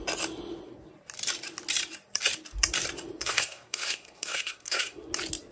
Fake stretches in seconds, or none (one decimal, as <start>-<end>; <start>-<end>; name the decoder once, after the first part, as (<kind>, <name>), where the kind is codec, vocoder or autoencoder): 3.2-5.1 (codec, SNAC)